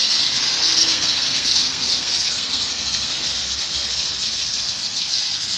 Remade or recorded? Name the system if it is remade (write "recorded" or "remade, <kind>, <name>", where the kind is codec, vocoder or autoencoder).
remade, codec, SNAC